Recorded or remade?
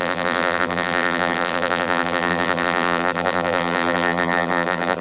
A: remade